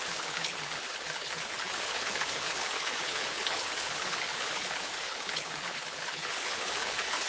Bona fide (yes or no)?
no